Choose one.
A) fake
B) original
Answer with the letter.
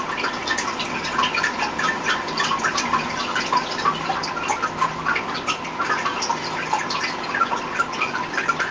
B